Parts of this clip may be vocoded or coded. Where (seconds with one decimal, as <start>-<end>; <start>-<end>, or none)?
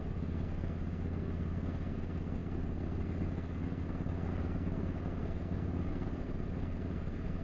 0.0-7.4